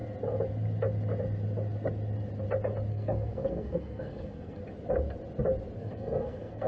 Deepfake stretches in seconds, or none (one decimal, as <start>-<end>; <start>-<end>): 2.9-4.6; 5.8-6.7